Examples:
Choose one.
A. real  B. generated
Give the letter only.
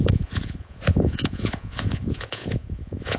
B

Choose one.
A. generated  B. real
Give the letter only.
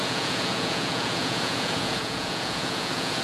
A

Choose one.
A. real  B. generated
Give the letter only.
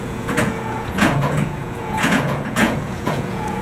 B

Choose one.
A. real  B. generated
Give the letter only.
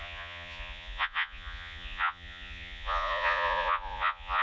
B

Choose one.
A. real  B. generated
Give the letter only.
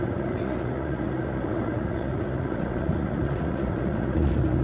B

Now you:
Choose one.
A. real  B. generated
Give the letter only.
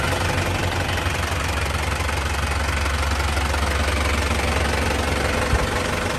A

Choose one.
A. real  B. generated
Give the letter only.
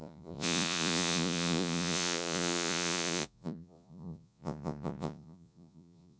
B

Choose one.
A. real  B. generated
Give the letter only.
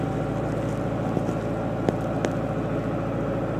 A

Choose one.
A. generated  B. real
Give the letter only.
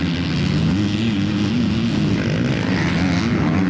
B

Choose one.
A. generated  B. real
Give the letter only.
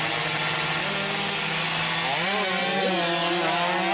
B